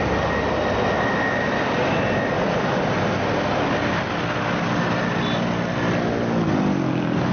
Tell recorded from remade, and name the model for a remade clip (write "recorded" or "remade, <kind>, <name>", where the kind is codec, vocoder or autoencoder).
recorded